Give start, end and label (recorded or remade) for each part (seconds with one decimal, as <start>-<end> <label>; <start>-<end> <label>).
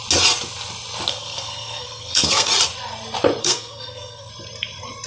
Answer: 0.0-1.1 recorded; 1.1-2.5 remade; 2.5-3.4 recorded; 3.4-4.3 remade; 4.3-5.1 recorded